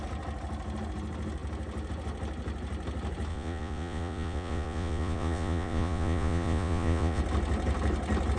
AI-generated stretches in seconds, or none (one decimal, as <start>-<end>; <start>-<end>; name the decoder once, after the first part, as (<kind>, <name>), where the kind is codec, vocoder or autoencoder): 3.3-7.2 (vocoder, Vocos)

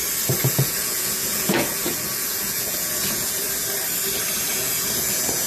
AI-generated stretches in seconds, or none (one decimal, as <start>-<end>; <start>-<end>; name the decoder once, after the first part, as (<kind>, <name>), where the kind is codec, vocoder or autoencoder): 0.4-3.4 (vocoder, Vocos); 4.5-5.5

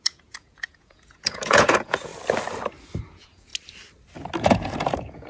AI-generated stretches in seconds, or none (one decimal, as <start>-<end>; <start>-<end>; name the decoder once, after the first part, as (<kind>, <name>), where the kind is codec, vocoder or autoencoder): 0.0-2.1 (vocoder, Vocos); 3.0-3.5; 4.4-5.3

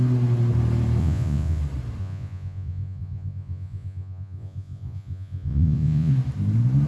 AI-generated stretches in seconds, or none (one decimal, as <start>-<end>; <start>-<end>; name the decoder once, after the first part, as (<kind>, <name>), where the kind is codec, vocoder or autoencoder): 1.0-1.6 (vocoder, Vocos); 2.0-6.1